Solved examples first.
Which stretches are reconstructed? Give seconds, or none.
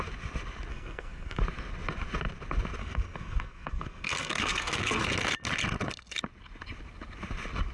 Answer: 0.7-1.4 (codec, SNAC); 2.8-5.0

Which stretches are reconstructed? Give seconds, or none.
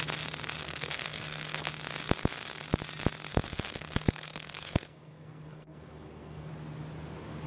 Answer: 0.6-1.7 (codec, SNAC); 3.3-6.5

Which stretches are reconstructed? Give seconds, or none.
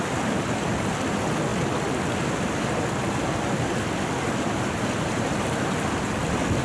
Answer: none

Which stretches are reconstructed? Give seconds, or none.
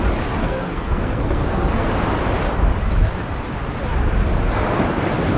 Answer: 0.4-1.9 (codec, SNAC)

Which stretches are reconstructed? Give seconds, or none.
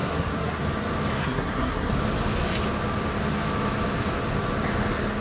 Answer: 0.0-0.6 (codec, SNAC); 1.2-1.9